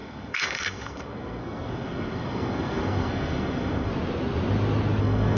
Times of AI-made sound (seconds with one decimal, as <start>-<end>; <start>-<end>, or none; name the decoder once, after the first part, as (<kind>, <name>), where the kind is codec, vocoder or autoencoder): 0.0-3.9 (codec, SNAC); 5.0-5.4